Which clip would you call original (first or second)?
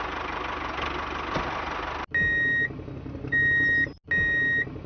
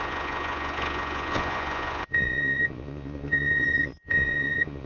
first